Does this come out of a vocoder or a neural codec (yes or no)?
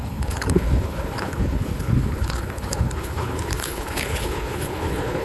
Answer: yes